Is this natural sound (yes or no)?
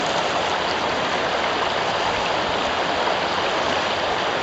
yes